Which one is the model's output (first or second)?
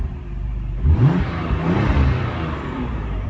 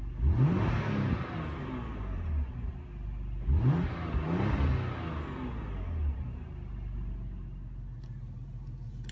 first